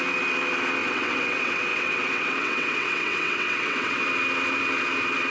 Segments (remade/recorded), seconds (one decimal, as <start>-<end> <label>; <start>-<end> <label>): 0.0-0.8 recorded; 0.8-4.0 remade; 4.0-5.3 recorded